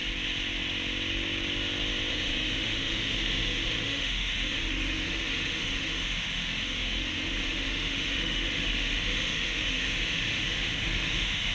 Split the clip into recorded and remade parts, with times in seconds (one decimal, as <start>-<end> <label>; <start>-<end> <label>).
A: 0.0-2.1 recorded; 2.1-11.5 remade